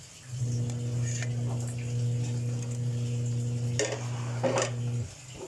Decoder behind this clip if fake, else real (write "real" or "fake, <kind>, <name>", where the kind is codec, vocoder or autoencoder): real